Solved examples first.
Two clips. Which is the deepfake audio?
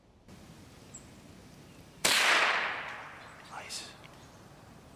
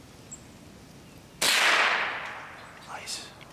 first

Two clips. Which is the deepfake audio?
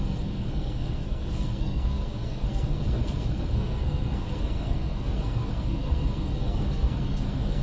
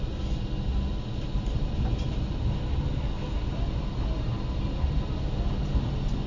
first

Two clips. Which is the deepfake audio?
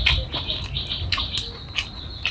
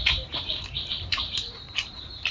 second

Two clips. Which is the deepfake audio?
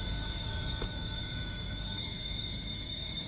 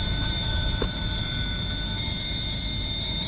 first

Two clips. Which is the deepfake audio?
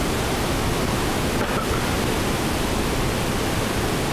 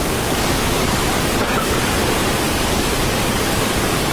second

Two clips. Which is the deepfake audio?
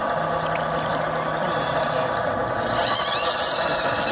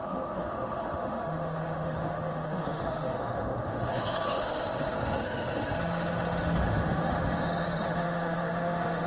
second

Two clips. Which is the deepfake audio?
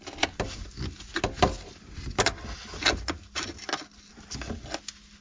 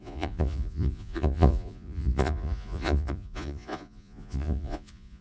second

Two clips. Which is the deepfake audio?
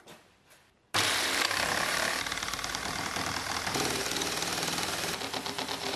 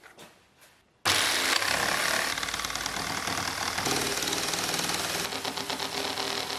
first